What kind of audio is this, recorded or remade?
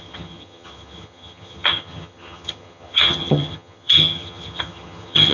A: remade